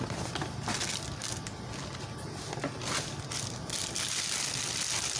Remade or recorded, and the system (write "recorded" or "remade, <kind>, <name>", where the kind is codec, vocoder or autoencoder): recorded